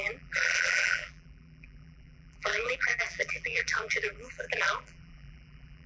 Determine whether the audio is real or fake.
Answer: fake